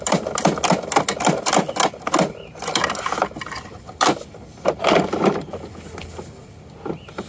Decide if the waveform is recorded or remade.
recorded